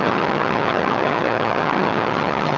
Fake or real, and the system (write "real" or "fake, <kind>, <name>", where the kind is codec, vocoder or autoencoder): fake, vocoder, HiFi-GAN